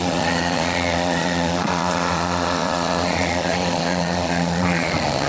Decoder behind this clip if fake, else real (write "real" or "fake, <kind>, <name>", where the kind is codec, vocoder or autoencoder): fake, vocoder, Vocos